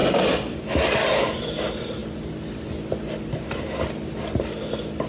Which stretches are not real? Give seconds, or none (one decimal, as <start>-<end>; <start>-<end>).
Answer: none

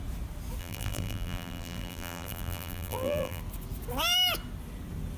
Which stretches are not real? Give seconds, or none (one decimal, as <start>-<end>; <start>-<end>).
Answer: 0.6-3.4

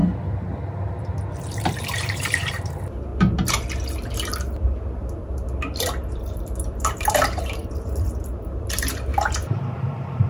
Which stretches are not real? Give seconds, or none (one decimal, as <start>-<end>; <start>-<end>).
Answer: 1.3-3.1; 6.1-10.3

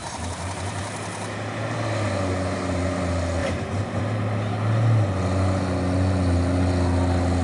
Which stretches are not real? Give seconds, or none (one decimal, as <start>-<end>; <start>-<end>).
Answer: 0.0-0.8; 3.4-4.0

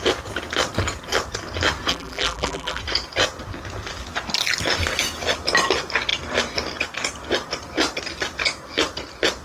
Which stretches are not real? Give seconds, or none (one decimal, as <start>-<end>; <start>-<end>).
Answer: 1.9-2.8

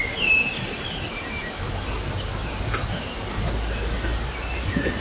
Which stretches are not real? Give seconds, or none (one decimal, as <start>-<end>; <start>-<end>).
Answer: 0.6-1.5; 2.4-3.1

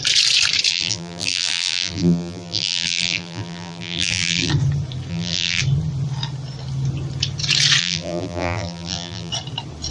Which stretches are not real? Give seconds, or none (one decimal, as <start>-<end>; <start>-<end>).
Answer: 0.7-4.5; 5.1-5.6; 7.8-9.3

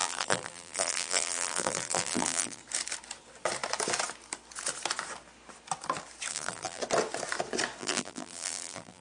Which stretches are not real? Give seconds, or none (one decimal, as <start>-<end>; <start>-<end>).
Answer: 0.0-2.6; 6.3-6.8; 7.8-9.0